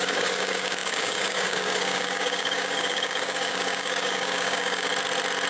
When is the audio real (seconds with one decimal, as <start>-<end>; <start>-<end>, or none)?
4.9-5.5